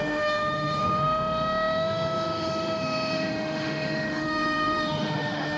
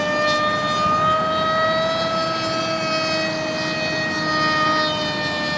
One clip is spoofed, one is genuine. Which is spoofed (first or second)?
first